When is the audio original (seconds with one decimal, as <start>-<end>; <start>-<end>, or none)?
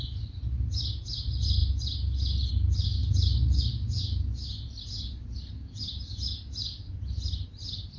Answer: 0.0-8.0